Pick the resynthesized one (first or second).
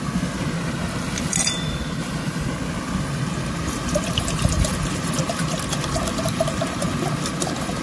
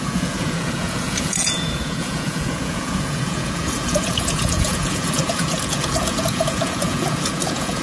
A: second